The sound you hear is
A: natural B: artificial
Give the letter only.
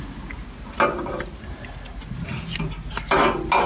A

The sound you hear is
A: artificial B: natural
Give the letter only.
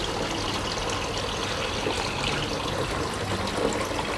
B